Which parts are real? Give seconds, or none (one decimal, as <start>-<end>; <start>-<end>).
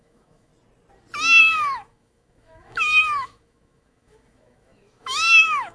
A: 0.5-1.4